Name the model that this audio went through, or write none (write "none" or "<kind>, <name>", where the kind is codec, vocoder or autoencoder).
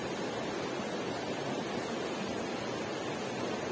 none